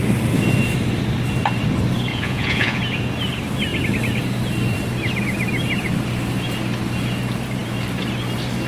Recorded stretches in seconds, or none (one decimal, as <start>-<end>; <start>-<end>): 0.0-2.1; 2.8-8.7